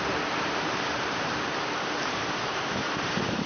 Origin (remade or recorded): remade